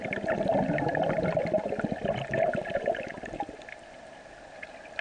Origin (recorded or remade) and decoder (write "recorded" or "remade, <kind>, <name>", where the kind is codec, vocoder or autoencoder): recorded